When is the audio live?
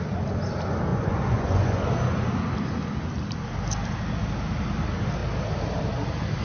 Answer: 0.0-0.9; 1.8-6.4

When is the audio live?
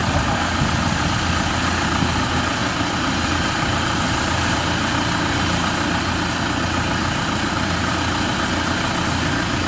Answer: 0.0-9.7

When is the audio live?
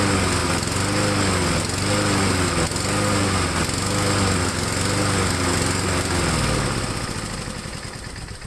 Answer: 0.0-8.5